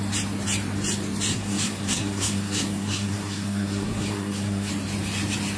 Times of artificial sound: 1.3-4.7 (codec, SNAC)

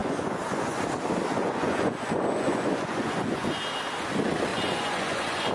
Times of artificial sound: 0.0-0.8 (vocoder, Vocos); 1.4-3.6; 4.5-5.5

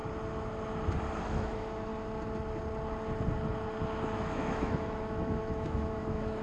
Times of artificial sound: 1.2-1.9 (autoencoder, DAC-VAE); 4.2-6.4

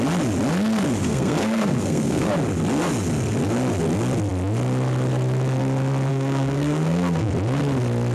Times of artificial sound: 1.0-2.3 (codec, SNAC); 6.1-7.3

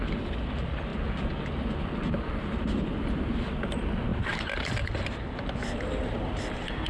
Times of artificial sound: 0.0-0.9 (vocoder, BigVGAN v2); 1.6-6.9

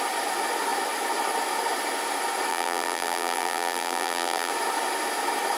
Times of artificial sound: 2.5-4.5 (vocoder, BigVGAN v2)

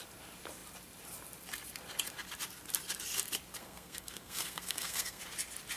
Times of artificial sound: 3.6-5.2 (codec, SNAC)